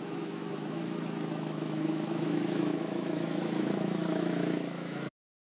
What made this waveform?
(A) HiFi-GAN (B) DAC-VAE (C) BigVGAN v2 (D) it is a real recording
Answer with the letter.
B